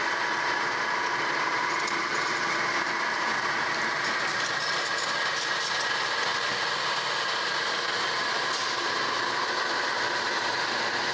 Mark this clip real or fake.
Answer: real